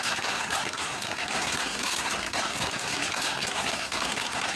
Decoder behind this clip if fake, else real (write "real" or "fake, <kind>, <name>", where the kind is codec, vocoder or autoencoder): fake, codec, SNAC